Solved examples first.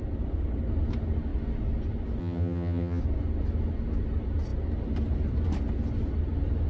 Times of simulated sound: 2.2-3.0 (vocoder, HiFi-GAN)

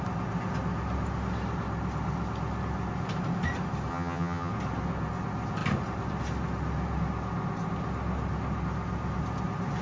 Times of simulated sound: 3.9-4.5 (vocoder, HiFi-GAN)